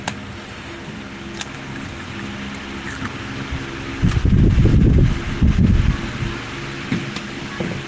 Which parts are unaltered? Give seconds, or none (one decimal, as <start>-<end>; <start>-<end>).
0.0-7.9